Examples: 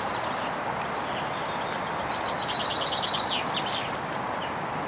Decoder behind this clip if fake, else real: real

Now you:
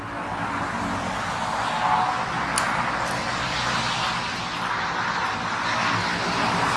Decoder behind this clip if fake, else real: real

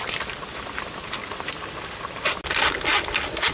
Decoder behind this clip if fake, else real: real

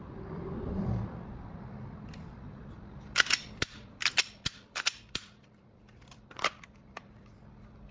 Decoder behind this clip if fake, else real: fake, vocoder, BigVGAN v2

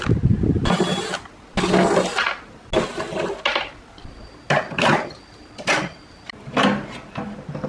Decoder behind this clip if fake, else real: real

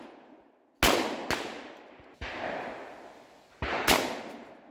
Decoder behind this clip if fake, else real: real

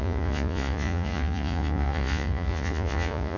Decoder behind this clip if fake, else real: fake, vocoder, Vocos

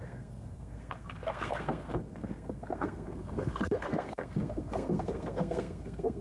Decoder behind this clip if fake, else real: fake, codec, SNAC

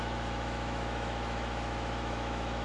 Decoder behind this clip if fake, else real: fake, autoencoder, DAC-VAE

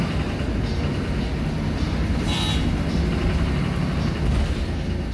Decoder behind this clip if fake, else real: real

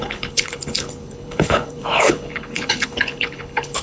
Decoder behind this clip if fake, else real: fake, codec, HILCodec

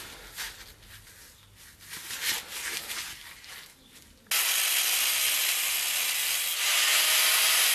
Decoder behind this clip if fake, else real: real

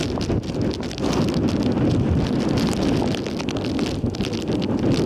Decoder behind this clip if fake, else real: real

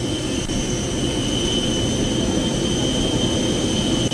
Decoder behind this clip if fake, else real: real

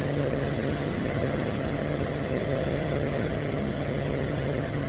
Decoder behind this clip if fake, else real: fake, vocoder, HiFi-GAN